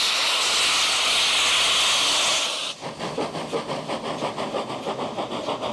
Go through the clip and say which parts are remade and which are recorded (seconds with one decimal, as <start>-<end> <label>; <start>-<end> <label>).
0.0-5.7 recorded